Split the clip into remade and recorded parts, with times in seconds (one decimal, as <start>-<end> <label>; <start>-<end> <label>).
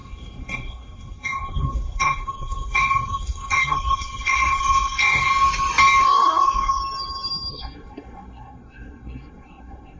0.0-5.3 remade; 5.3-6.0 recorded; 6.0-6.8 remade; 6.8-7.5 recorded; 7.5-10.0 remade